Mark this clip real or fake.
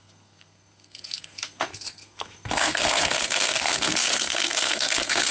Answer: fake